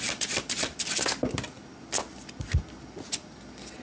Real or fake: fake